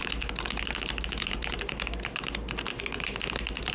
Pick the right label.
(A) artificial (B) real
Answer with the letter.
B